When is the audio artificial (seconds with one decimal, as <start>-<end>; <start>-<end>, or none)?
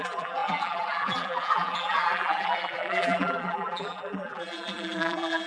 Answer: 0.0-5.5